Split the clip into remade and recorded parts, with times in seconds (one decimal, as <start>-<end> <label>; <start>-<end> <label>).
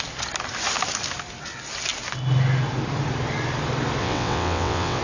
0.0-4.0 recorded; 4.0-5.0 remade